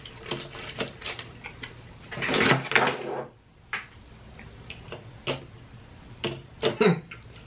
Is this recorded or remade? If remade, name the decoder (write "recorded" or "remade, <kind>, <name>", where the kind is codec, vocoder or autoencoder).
recorded